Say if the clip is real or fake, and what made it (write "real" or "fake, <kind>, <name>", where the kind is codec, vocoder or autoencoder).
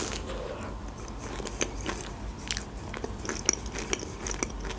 real